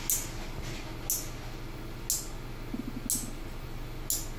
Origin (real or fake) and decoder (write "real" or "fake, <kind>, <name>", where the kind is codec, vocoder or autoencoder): real